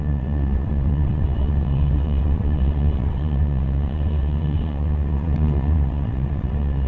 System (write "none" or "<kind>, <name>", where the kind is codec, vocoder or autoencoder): vocoder, WaveNeXt